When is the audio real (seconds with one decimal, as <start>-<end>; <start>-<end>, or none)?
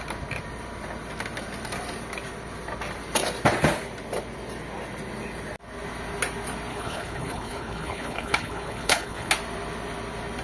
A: 0.0-6.7; 9.3-10.4